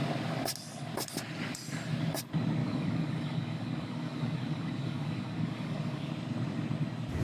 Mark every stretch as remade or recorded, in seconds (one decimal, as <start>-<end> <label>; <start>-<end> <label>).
0.0-2.6 recorded; 2.6-6.1 remade; 6.1-7.2 recorded